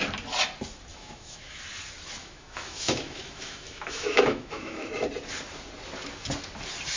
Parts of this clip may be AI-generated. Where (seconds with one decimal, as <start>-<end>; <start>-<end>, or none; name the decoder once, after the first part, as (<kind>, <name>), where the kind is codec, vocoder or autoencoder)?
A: 0.9-1.6 (autoencoder, DAC-VAE); 2.2-4.9